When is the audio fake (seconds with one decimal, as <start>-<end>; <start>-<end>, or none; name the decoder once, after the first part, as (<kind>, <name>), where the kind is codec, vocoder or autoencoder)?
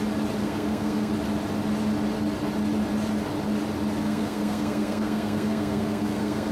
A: 0.4-1.1 (codec, SNAC); 4.0-6.5